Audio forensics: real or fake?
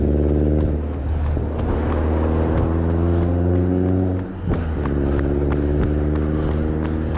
real